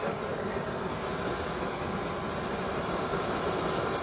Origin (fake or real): real